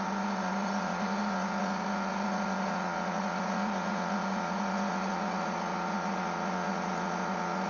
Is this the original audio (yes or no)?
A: no